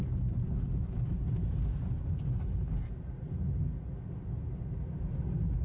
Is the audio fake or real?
real